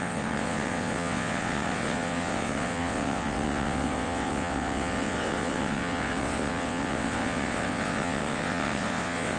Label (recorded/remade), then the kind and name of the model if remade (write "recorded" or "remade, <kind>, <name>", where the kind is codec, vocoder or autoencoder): remade, vocoder, WaveNeXt